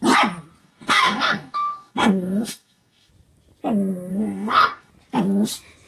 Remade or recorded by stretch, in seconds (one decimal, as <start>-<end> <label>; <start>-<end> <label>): 0.0-0.6 recorded; 0.6-3.1 remade; 3.1-4.1 recorded; 4.1-4.9 remade; 4.9-5.9 recorded